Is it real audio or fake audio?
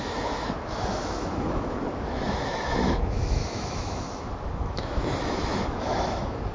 fake